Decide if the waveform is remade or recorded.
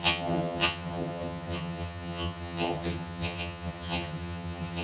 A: remade